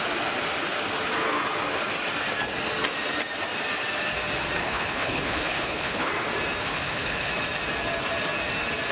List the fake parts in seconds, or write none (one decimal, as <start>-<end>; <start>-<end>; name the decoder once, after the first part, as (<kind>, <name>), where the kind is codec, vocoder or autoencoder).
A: 4.6-6.1 (codec, HILCodec); 6.6-7.3